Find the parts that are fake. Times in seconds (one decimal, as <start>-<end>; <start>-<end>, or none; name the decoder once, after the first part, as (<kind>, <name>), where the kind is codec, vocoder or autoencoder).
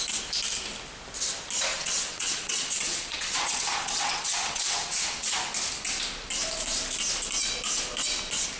1.7-5.3 (vocoder, WaveNeXt)